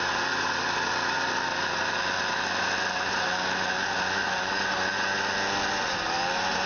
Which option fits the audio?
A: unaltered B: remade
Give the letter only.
A